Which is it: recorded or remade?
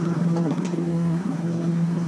remade